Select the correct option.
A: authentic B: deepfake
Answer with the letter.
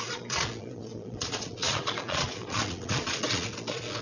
B